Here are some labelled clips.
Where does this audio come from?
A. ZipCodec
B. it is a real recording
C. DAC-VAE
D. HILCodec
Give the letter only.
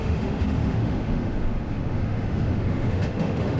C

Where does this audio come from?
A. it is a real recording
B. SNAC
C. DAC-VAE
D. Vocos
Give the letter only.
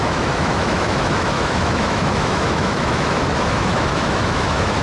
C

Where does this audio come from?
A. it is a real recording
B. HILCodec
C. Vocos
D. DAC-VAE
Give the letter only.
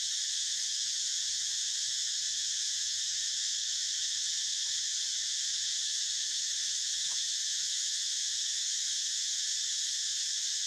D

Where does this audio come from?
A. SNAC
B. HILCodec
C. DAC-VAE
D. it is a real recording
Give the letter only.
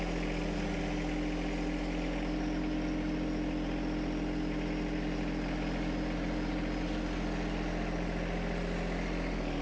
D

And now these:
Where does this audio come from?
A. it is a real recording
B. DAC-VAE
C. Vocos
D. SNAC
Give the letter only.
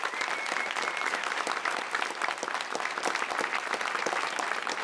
A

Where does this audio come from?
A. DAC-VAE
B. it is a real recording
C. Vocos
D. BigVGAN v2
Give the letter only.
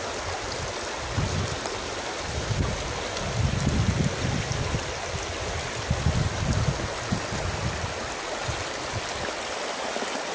B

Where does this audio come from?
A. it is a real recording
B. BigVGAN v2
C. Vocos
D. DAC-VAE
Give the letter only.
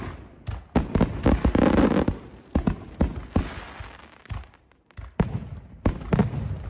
A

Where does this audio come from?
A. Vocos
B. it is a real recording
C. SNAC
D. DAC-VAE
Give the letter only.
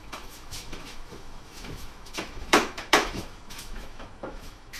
D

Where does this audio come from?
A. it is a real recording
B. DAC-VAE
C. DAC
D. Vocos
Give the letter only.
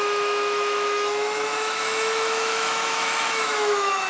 B